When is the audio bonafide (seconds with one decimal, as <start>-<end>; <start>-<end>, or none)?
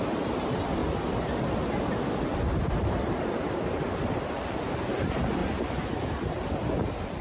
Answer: 0.8-2.6; 5.4-6.3